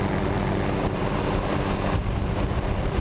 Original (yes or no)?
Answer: yes